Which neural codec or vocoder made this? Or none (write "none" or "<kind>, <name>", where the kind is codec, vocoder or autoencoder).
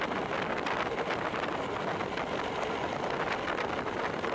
none